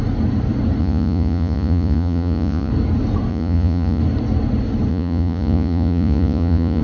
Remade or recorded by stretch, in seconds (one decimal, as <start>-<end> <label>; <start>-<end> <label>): 0.0-0.8 recorded; 0.8-2.7 remade; 2.7-3.3 recorded; 3.3-4.0 remade; 4.0-4.9 recorded; 4.9-6.8 remade